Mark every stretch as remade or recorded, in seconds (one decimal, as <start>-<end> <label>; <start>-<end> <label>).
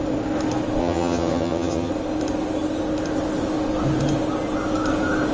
0.0-0.8 recorded; 0.8-1.9 remade; 1.9-5.3 recorded